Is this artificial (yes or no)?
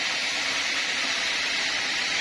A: no